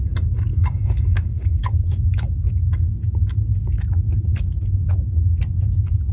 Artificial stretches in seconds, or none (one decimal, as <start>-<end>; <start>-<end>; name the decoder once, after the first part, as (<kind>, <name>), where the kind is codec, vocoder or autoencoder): 0.5-2.9 (codec, DAC); 3.5-5.4